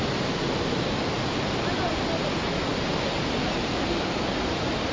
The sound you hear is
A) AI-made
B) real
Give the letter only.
B